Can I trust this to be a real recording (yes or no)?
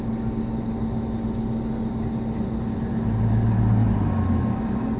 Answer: yes